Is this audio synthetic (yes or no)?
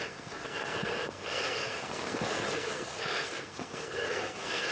yes